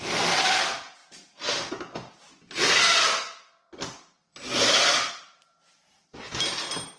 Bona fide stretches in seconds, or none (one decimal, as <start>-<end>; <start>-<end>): 0.0-7.0